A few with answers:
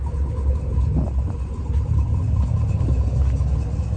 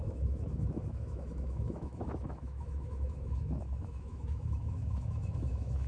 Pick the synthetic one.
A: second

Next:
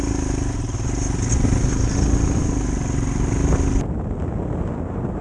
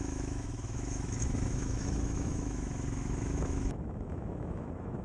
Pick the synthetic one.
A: second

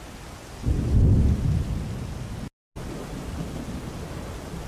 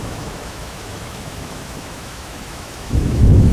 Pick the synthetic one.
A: second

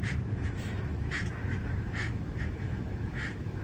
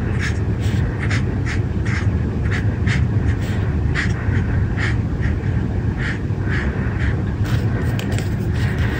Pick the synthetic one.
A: first